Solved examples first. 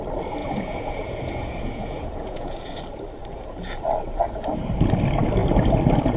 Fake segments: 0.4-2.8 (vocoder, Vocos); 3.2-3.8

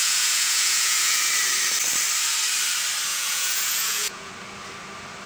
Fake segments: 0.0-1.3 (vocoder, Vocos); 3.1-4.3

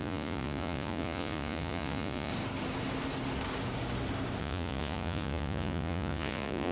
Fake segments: 0.0-2.3 (vocoder, Vocos); 4.4-6.7

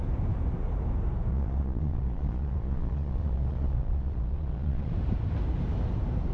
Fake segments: 1.3-4.9 (vocoder, Vocos)

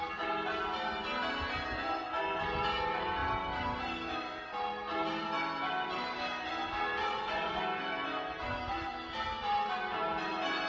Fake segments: 7.0-7.6 (vocoder, Vocos)

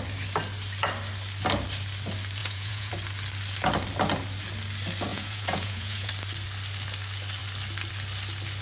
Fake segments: 2.4-2.9 (vocoder, Vocos); 5.1-6.1